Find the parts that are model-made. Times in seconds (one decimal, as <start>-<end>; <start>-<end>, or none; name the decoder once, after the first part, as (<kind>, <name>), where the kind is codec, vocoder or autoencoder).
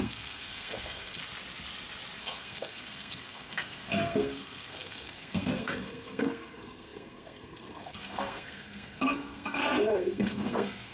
0.0-1.2 (codec, SNAC); 2.2-10.9